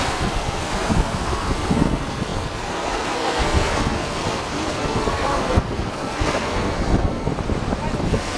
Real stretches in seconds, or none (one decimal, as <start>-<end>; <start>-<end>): 7.3-8.0